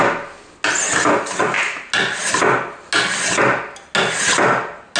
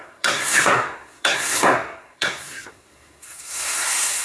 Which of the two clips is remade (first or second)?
second